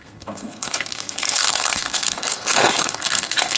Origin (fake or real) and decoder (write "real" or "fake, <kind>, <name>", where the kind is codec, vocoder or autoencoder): fake, codec, SNAC